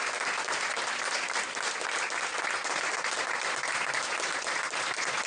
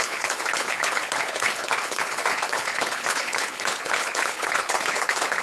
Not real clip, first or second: second